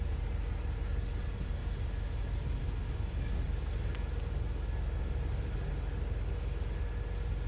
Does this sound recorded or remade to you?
recorded